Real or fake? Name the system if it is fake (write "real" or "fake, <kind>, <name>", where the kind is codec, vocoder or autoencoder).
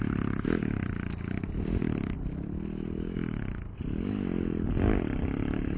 real